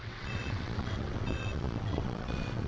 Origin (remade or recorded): remade